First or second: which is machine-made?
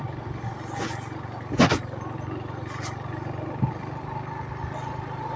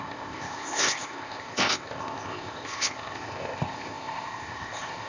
second